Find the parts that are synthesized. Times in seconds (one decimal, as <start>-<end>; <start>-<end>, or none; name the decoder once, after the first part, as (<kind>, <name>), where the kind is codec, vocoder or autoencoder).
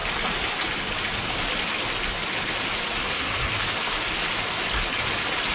3.0-3.5 (codec, SNAC)